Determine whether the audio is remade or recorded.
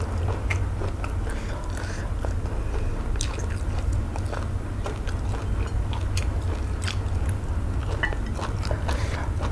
recorded